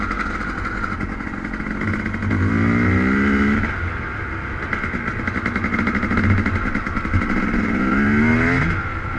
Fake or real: real